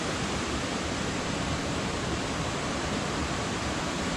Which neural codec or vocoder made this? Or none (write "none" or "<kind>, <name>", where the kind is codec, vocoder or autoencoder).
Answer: none